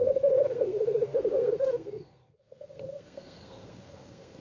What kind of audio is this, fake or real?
fake